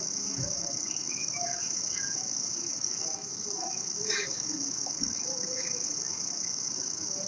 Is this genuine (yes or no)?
no